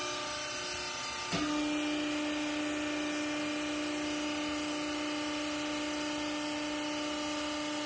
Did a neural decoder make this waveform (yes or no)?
no